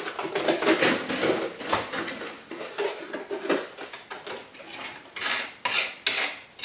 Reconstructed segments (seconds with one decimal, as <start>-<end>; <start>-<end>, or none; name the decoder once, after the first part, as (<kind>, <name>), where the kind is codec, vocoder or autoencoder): none